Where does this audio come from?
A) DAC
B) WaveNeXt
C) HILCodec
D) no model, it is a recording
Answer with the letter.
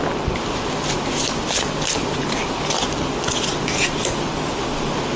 D